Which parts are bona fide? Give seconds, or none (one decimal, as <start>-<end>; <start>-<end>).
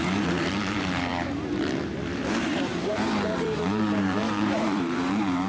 1.1-2.4